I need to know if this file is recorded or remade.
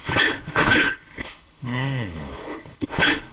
remade